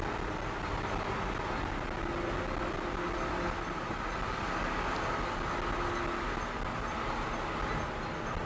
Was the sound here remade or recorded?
recorded